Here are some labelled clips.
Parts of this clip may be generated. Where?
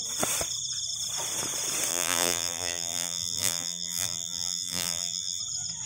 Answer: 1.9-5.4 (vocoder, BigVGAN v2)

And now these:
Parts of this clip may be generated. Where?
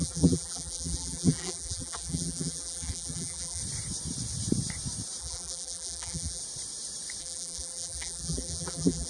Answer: 0.0-3.6 (vocoder, BigVGAN v2); 5.2-6.4; 7.2-9.1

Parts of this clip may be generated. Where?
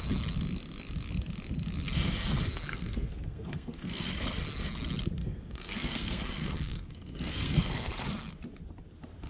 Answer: 2.7-4.1 (codec, SNAC); 5.2-8.0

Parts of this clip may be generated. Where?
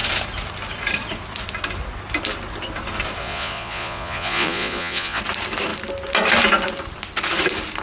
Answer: 3.2-5.2 (vocoder, Vocos)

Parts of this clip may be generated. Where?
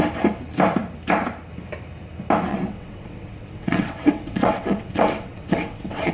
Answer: 2.5-6.1 (vocoder, WaveNeXt)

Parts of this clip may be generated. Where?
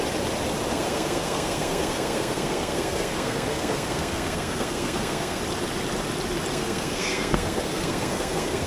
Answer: 0.7-5.4 (codec, SNAC); 6.5-8.7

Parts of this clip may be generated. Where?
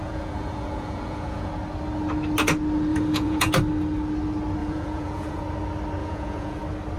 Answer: 0.0-1.5 (vocoder, Vocos); 2.9-3.5; 4.6-5.4; 6.0-6.6